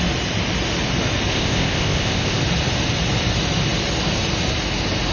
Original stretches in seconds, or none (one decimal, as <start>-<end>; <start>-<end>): 0.0-1.3; 2.4-5.1